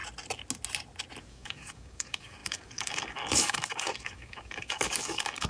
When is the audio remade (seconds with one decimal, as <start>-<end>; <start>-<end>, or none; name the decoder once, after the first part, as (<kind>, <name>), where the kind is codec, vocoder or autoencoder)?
1.3-5.5 (codec, DAC)